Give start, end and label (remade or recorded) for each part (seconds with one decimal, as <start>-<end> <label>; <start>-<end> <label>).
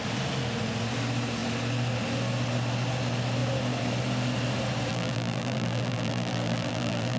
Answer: 0.0-4.9 recorded; 4.9-7.2 remade